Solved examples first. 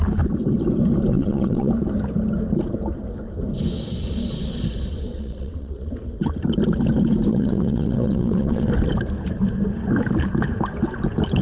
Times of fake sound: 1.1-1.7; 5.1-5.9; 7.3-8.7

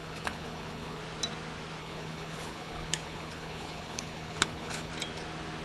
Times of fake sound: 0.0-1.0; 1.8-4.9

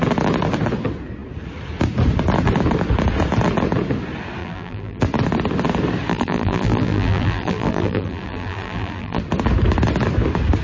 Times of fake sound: 4.4-5.0; 6.1-9.2

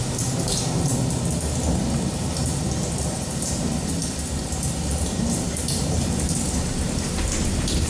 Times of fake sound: 0.0-0.9; 2.1-2.5; 3.0-4.0; 4.9-7.9

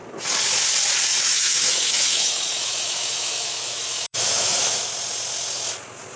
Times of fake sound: 1.1-4.8

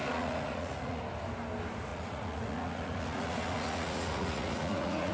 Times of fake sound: 0.0-1.0; 1.9-5.1

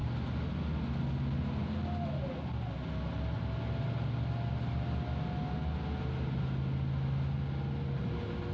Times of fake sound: none